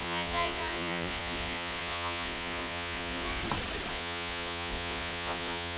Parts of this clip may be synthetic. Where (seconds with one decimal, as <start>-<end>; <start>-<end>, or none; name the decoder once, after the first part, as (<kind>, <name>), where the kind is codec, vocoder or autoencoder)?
0.0-3.4 (vocoder, Vocos); 3.9-5.8